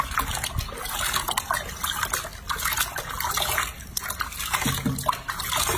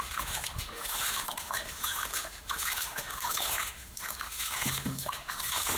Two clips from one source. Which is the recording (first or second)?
first